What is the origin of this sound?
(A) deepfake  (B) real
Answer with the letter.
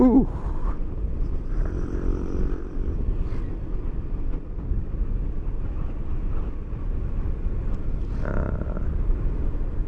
B